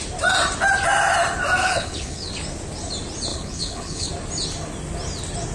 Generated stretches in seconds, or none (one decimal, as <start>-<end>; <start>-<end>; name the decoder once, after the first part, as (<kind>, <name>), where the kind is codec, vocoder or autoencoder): 1.6-2.3 (codec, HILCodec); 3.3-4.1